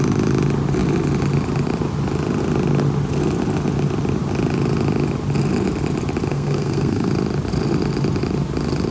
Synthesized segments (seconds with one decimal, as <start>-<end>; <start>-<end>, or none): 6.3-7.1